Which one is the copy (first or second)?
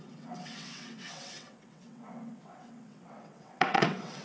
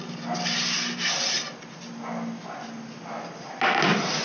first